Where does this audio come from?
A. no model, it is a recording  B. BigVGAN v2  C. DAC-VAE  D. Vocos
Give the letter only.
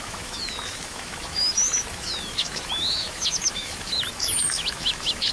C